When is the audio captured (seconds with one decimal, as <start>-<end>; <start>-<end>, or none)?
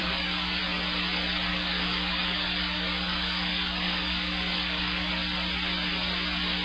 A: 0.6-1.5; 5.1-6.6